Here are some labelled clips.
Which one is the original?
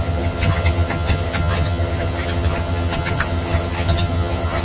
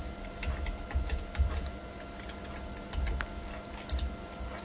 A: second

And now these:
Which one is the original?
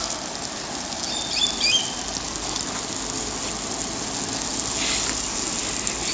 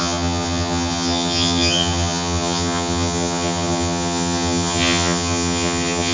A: first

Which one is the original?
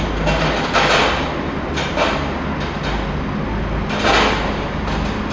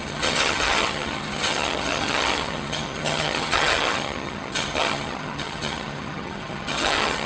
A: first